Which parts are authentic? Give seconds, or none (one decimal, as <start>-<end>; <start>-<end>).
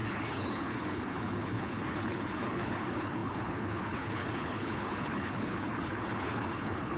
none